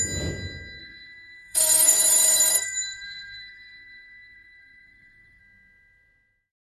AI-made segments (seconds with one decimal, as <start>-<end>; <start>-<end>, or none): 0.8-2.0; 2.5-5.4